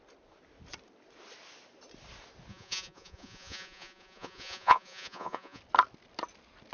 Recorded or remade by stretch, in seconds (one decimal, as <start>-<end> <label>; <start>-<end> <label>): 0.0-2.5 recorded; 2.5-5.6 remade; 5.6-6.7 recorded